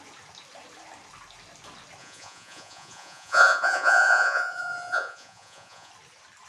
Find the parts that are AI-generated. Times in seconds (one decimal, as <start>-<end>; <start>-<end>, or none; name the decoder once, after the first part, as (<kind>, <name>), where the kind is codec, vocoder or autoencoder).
2.0-5.9 (vocoder, Vocos)